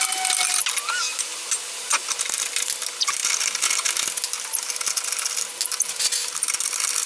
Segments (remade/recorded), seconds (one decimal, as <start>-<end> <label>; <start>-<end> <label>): 0.0-7.1 recorded